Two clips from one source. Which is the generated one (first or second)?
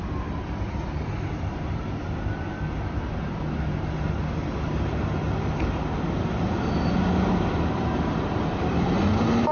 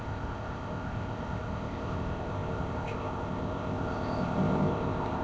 second